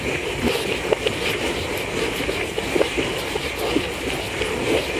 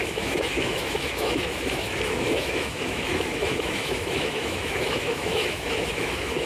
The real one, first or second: first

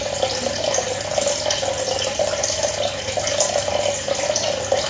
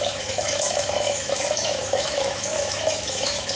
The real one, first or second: first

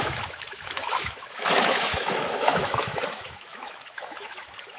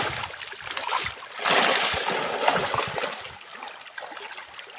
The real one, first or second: second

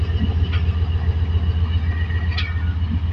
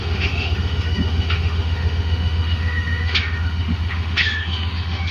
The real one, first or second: first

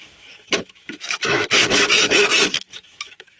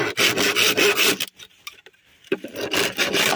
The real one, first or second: second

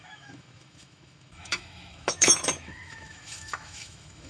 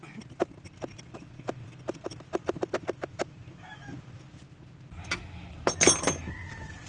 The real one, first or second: second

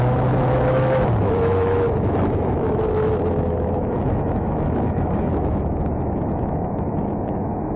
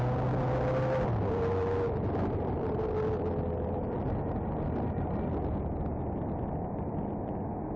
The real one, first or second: second